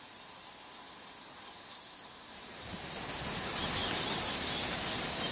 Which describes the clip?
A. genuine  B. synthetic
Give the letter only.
A